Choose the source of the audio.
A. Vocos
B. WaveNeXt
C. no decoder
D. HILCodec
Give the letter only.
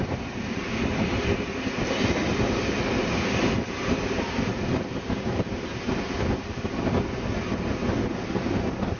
C